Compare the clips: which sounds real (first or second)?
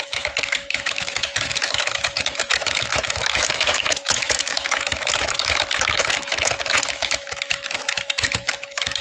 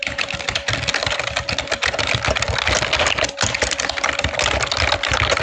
second